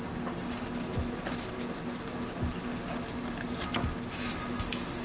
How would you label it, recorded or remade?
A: recorded